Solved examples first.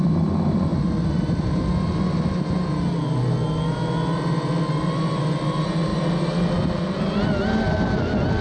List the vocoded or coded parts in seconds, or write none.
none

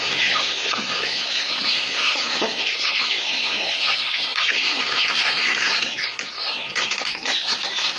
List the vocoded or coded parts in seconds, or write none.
0.0-8.0

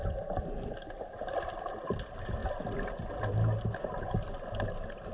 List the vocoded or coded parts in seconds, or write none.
none

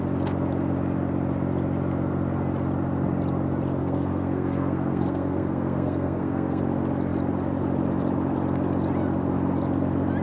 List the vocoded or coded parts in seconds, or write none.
3.8-6.6

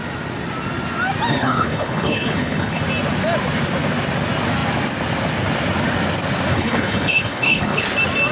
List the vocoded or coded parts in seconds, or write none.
1.3-2.8; 6.5-7.8

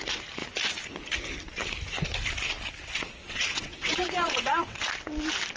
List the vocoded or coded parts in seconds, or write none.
3.2-4.8